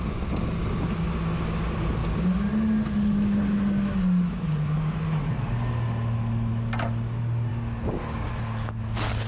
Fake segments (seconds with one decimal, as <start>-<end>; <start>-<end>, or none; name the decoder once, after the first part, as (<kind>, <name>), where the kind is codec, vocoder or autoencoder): 7.5-8.3 (codec, DAC)